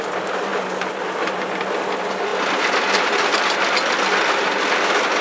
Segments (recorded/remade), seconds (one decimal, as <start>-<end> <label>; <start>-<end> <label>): 0.0-5.2 recorded